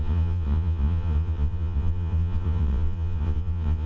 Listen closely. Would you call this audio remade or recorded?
remade